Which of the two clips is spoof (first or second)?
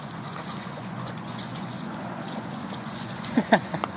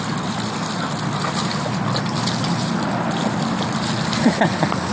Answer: first